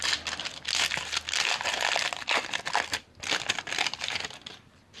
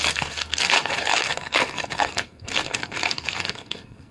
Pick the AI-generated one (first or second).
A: second